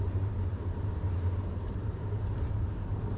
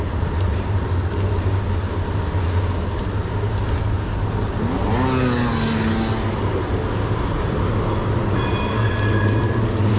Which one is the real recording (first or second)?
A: second